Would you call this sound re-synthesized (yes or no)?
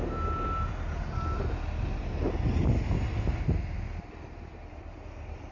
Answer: no